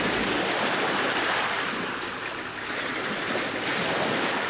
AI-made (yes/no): no